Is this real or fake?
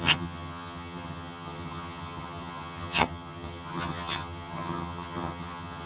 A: fake